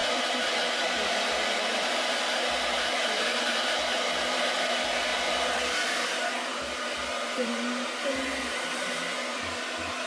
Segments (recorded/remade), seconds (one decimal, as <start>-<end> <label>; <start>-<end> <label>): 0.0-10.1 remade